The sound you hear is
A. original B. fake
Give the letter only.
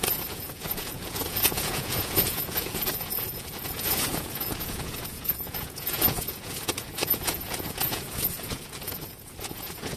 B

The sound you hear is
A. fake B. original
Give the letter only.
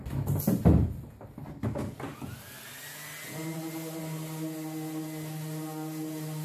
B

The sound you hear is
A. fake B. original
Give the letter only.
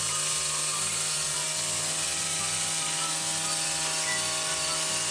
B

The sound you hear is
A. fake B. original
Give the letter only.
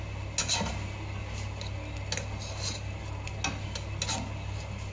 B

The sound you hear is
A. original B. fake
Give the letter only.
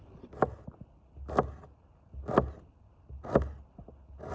A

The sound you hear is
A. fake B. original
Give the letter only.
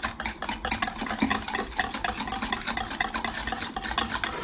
B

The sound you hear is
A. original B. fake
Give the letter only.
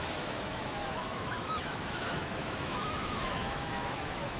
B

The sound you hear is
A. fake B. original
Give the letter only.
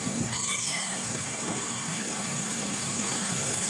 A